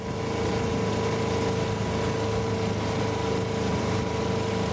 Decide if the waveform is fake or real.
real